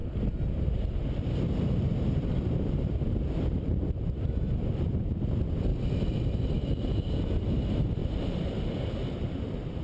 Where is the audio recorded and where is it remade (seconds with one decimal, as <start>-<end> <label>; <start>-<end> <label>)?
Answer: 0.0-5.0 remade; 5.0-5.7 recorded; 5.7-6.7 remade; 6.7-8.0 recorded; 8.0-8.6 remade; 8.6-9.8 recorded

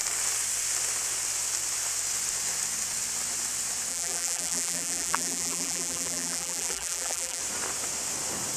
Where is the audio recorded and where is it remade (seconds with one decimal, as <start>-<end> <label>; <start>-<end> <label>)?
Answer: 0.0-3.9 recorded; 3.9-7.4 remade; 7.4-8.6 recorded